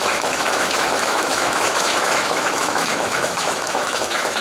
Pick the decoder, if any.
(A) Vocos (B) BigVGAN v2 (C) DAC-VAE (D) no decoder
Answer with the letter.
C